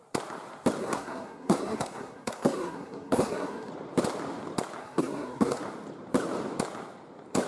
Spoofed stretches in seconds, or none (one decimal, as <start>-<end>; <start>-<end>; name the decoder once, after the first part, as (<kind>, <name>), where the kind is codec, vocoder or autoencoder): 0.8-3.7 (codec, SNAC); 4.8-5.6